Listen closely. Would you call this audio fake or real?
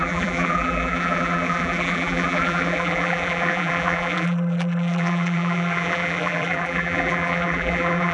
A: fake